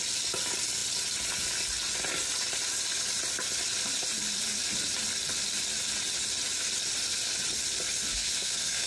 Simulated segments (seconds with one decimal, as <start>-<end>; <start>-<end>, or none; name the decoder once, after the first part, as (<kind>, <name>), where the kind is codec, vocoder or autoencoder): 8.1-8.9 (codec, SNAC)